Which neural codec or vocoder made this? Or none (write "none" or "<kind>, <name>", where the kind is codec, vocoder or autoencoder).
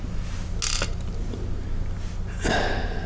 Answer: none